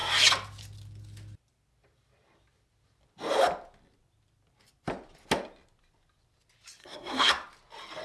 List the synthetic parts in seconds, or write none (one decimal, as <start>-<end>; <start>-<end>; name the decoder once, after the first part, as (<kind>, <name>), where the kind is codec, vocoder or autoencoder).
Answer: 6.8-7.3 (codec, SNAC)